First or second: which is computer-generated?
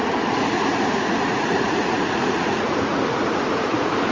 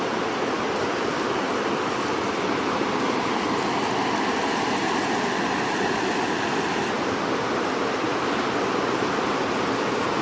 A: first